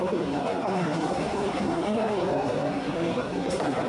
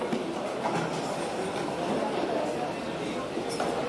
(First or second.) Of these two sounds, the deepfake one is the first